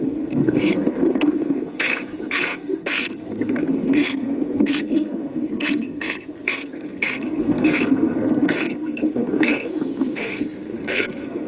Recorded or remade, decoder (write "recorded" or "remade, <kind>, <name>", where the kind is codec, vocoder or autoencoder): remade, codec, SNAC